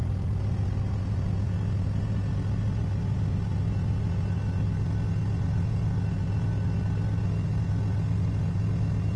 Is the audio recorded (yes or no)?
yes